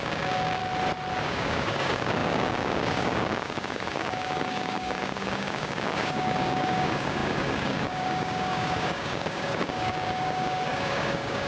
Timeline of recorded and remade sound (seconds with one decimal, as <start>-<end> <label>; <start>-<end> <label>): 0.0-0.6 remade; 0.6-1.2 recorded; 1.2-11.5 remade